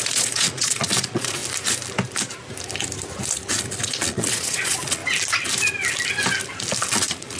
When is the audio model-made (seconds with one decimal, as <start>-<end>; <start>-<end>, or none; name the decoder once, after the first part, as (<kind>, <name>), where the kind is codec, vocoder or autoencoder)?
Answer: 0.0-1.4 (vocoder, Vocos); 3.7-5.0; 6.9-7.4